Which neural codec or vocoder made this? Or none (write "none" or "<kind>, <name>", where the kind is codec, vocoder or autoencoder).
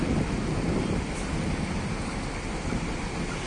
none